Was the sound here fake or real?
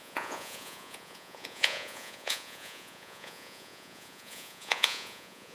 fake